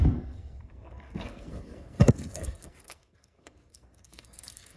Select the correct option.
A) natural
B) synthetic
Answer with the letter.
B